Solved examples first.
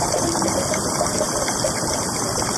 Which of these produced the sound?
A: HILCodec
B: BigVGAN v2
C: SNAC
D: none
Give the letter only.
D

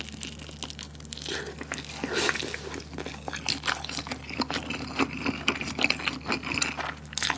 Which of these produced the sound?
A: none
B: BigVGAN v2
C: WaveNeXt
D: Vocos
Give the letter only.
A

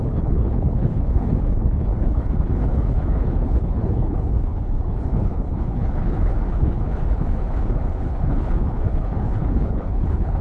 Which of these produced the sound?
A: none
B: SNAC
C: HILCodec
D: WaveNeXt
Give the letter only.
C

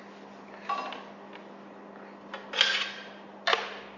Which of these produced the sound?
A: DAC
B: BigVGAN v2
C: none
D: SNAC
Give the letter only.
C